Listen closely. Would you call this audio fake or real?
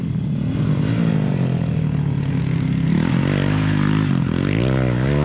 real